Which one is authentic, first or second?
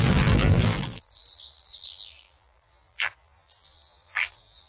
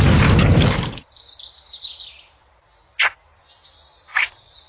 second